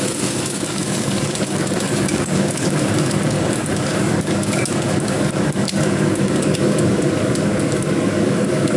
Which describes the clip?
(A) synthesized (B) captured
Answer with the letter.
A